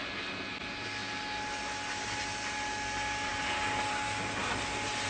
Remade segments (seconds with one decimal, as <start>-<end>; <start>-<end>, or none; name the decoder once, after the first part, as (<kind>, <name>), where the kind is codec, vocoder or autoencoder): none